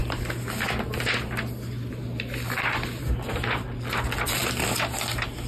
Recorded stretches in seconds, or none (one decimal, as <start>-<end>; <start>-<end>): 0.0-5.5